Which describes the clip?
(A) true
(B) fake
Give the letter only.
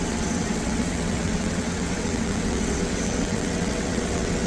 B